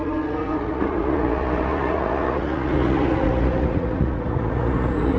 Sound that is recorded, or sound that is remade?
remade